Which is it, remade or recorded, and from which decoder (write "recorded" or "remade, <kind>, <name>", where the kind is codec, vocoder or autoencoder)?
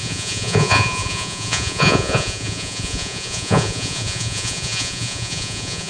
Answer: remade, vocoder, Vocos